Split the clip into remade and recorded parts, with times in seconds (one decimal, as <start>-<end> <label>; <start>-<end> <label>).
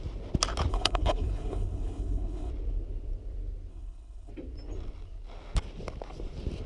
0.0-0.7 recorded; 0.7-2.5 remade; 2.5-3.7 recorded; 3.7-4.3 remade; 4.3-6.7 recorded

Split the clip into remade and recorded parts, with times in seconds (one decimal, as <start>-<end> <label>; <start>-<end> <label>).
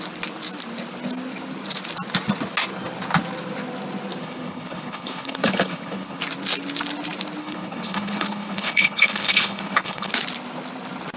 0.0-4.2 recorded; 4.2-6.2 remade; 6.2-7.4 recorded; 7.4-10.1 remade; 10.1-11.2 recorded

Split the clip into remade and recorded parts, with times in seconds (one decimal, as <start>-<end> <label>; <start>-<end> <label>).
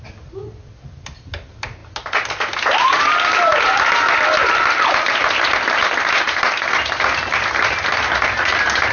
0.0-8.9 recorded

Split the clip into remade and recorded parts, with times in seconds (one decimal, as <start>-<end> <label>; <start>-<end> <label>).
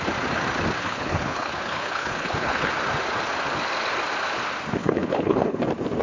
0.0-0.8 recorded; 0.8-2.7 remade; 2.7-4.8 recorded; 4.8-5.6 remade; 5.6-6.0 recorded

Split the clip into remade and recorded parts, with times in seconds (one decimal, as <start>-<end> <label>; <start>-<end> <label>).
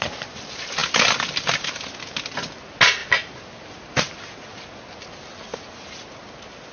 0.0-6.7 recorded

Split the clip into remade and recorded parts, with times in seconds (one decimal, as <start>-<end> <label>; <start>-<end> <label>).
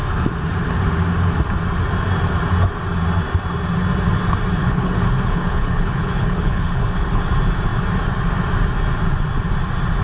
0.0-4.6 recorded; 4.6-7.2 remade; 7.2-10.0 recorded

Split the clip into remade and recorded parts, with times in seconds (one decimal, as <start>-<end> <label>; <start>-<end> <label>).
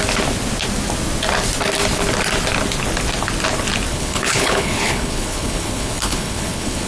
0.0-3.9 recorded; 3.9-6.9 remade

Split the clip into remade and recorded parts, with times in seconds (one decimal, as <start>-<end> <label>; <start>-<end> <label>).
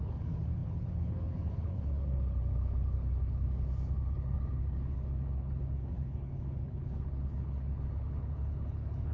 0.0-9.1 remade